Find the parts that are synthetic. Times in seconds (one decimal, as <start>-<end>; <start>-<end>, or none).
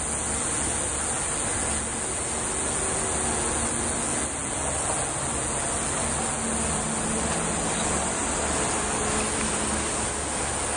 none